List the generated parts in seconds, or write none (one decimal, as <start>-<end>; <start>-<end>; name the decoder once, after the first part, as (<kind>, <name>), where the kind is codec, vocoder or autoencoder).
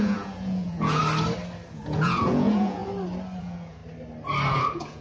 0.0-1.0 (vocoder, Vocos); 1.7-2.8; 3.4-3.8; 4.5-5.0